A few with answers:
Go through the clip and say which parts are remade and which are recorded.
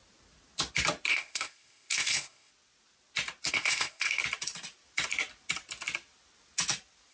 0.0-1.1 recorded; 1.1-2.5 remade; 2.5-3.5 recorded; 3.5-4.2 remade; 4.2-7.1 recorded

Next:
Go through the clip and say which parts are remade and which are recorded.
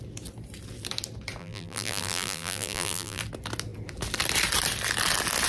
0.0-1.4 recorded; 1.4-3.2 remade; 3.2-5.5 recorded